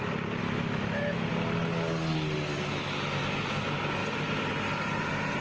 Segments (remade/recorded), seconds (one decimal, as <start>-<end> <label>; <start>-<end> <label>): 0.0-0.4 recorded; 0.4-1.3 remade; 1.3-2.5 recorded; 2.5-3.2 remade; 3.2-5.4 recorded